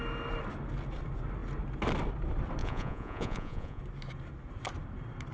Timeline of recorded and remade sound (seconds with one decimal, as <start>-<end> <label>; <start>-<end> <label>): 0.0-2.6 recorded; 2.6-3.8 remade; 3.8-5.3 recorded